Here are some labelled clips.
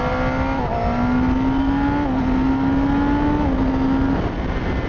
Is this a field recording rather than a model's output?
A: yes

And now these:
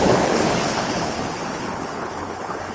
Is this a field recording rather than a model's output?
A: no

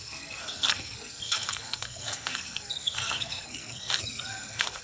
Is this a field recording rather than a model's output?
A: no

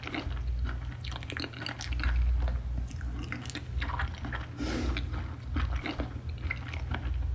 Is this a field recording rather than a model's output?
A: yes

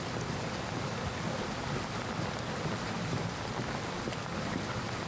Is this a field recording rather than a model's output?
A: no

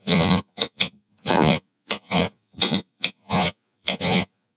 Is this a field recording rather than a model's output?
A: no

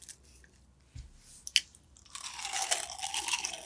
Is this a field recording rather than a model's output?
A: yes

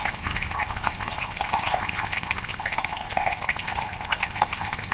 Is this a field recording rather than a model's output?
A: no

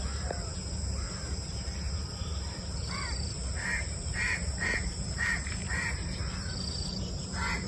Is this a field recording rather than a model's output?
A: no